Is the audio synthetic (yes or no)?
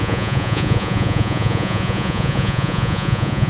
yes